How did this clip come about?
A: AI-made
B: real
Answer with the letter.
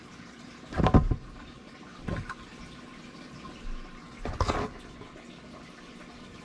B